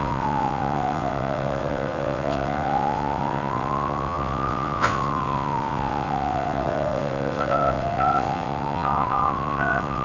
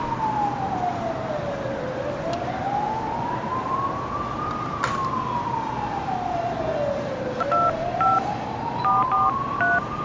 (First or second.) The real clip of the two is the second